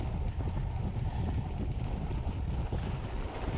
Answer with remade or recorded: recorded